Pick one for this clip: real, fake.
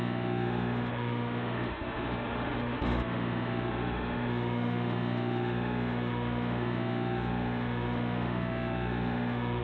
fake